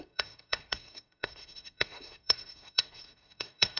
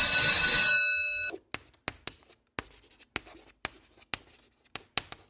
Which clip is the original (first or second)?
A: second